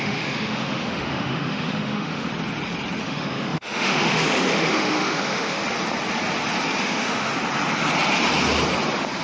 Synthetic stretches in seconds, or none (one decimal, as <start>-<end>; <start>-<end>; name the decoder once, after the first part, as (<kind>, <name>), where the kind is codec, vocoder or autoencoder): 0.0-2.3 (autoencoder, DAC-VAE); 3.0-5.6; 6.8-7.3

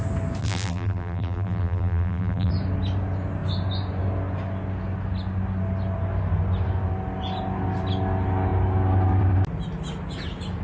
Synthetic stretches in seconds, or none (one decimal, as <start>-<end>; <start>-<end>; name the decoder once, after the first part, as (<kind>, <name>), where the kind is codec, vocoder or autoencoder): 0.4-2.5 (vocoder, BigVGAN v2)

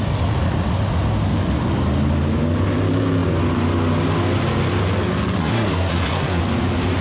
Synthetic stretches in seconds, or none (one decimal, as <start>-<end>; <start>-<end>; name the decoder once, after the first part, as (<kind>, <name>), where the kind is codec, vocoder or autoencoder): 5.4-6.4 (codec, SNAC)

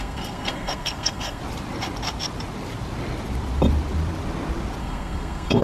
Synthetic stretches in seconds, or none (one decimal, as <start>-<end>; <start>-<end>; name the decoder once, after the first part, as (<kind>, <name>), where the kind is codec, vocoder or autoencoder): 0.0-1.4 (codec, SNAC); 4.8-5.6

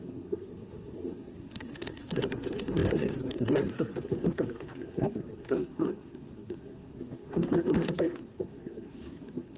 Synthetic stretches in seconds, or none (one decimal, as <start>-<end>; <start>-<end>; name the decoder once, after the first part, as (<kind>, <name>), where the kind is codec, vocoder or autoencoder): 0.0-9.6 (codec, SNAC)

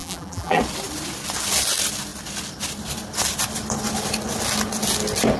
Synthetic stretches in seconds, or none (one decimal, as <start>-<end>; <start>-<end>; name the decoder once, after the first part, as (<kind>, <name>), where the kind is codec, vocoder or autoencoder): 0.0-0.6 (vocoder, BigVGAN v2)

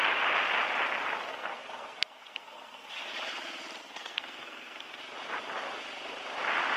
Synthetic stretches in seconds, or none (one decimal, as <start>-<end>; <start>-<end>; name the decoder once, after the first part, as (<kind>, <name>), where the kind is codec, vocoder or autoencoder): 1.3-3.1 (codec, SNAC); 3.8-5.0

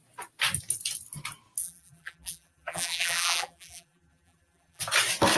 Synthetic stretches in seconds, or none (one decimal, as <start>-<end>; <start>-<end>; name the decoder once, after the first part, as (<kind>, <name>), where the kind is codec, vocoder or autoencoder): 1.6-4.8 (vocoder, BigVGAN v2)